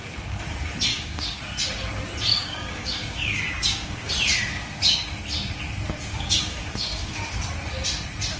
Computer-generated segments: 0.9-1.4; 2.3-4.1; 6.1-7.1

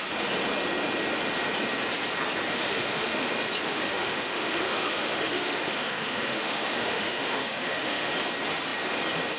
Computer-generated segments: 2.5-3.3; 3.7-8.1